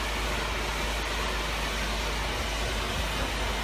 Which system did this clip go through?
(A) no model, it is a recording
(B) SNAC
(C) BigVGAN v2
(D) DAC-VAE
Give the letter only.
A